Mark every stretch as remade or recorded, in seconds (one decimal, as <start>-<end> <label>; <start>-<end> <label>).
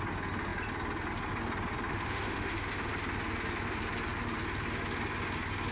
0.0-1.9 recorded; 1.9-2.9 remade; 2.9-5.7 recorded